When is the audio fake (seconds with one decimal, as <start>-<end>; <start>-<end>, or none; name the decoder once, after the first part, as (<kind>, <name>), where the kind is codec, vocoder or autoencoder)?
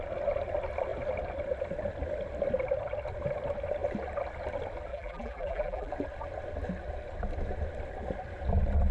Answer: 4.9-5.9 (vocoder, BigVGAN v2)